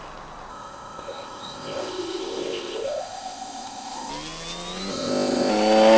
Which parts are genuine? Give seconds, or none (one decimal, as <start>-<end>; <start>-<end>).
0.0-0.5; 4.1-4.9; 5.5-6.0